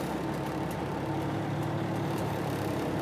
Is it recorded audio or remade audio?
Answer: recorded